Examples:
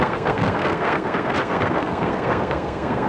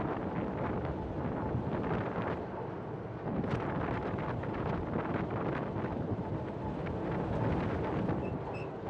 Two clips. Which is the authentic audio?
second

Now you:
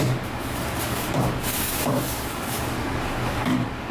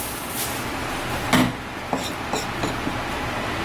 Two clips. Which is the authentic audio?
second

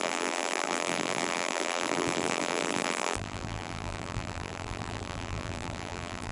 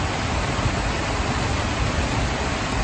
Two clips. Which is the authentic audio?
second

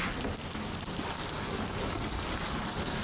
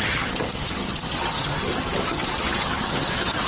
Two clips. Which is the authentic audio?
first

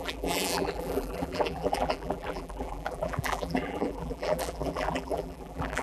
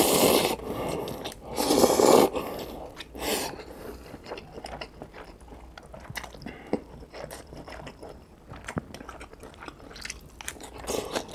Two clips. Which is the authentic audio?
second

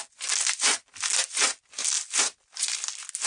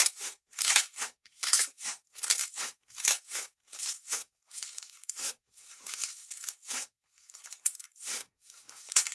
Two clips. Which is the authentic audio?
first